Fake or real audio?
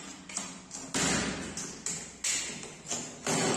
real